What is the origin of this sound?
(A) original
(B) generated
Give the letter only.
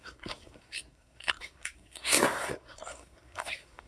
B